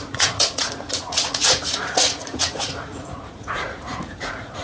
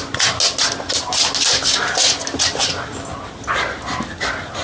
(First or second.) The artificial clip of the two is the first